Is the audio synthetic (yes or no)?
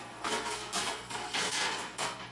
yes